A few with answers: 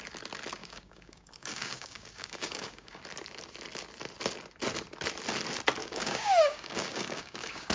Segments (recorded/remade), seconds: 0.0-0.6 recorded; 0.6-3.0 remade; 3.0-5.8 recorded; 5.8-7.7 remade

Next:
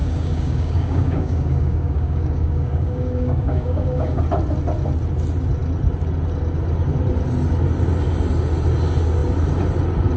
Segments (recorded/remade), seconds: 0.0-4.2 remade; 4.2-10.2 recorded

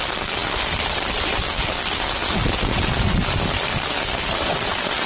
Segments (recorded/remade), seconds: 0.0-5.1 recorded

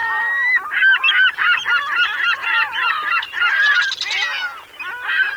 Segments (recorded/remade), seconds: 0.0-2.4 recorded; 2.4-3.8 remade; 3.8-5.4 recorded

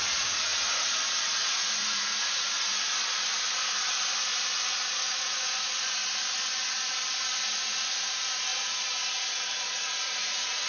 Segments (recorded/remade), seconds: 0.0-0.5 remade; 0.5-1.4 recorded; 1.4-2.7 remade; 2.7-4.8 recorded; 4.8-6.0 remade; 6.0-7.6 recorded; 7.6-10.7 remade